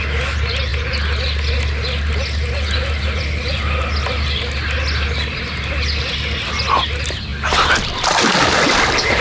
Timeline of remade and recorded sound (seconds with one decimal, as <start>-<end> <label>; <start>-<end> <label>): 0.0-9.2 recorded